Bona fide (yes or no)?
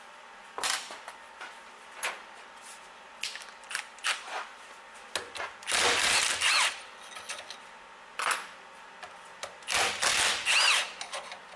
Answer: yes